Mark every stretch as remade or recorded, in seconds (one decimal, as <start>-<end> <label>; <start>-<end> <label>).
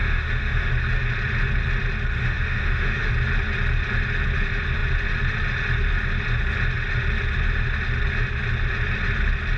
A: 0.0-0.7 remade; 0.7-2.2 recorded; 2.2-3.1 remade; 3.1-9.6 recorded